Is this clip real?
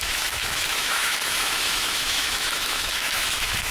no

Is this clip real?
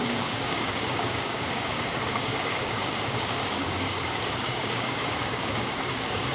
no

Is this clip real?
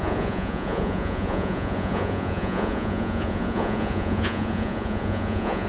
no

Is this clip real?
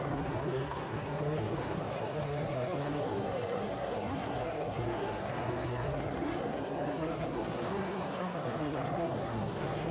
no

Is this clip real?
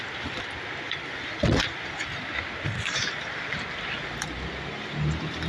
yes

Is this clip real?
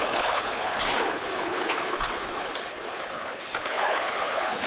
no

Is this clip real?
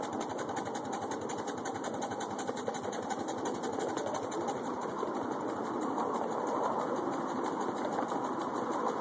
yes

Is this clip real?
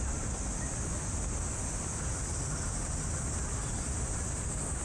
yes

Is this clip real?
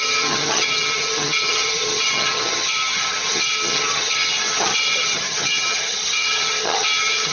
no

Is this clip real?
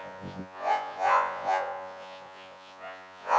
no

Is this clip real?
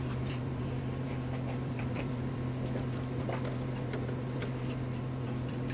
no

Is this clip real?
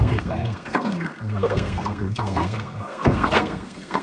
no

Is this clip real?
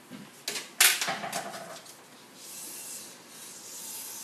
yes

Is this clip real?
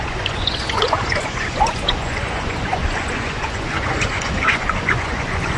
no